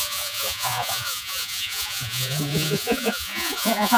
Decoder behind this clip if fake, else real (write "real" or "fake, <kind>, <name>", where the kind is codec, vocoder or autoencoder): fake, vocoder, Vocos